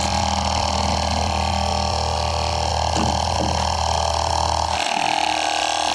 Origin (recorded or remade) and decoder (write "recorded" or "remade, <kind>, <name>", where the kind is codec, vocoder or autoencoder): recorded